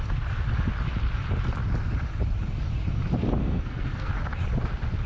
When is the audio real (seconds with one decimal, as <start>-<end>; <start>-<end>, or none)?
0.0-3.4; 4.1-5.1

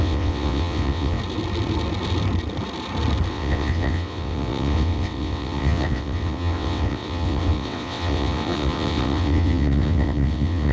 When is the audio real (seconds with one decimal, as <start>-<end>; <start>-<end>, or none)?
1.2-3.3

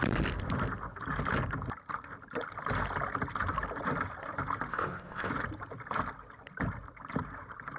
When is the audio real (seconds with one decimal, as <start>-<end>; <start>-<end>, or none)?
0.0-4.7; 5.3-7.8

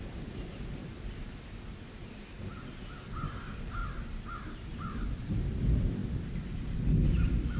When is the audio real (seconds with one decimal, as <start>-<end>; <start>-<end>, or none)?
0.0-3.8; 5.2-7.6